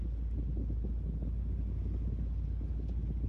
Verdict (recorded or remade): recorded